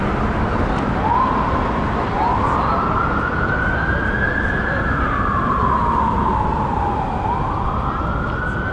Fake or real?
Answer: real